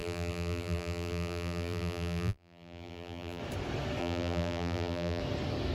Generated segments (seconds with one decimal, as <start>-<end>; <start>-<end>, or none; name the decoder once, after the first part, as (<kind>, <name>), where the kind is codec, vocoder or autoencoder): 0.0-3.4 (vocoder, BigVGAN v2); 4.0-5.2